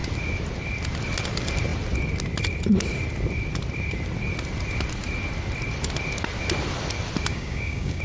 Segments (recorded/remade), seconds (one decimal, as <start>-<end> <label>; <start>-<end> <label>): 0.0-7.3 recorded; 7.3-8.0 remade